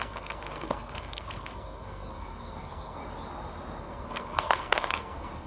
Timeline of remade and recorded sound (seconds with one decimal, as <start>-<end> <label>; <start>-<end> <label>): 0.0-3.0 remade; 3.0-3.8 recorded; 3.8-5.5 remade